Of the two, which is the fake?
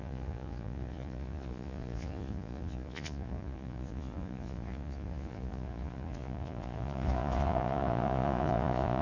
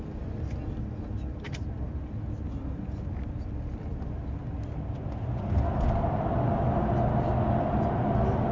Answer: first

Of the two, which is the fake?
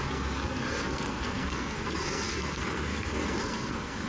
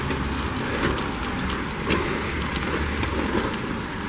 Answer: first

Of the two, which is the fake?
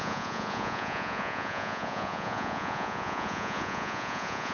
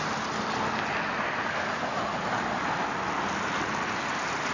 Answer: first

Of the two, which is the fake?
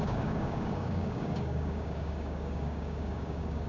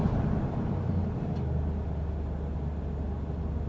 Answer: first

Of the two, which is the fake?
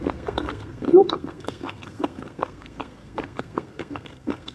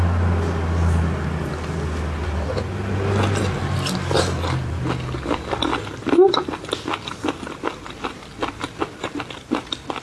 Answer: first